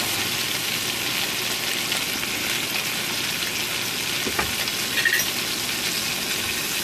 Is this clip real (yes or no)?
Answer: yes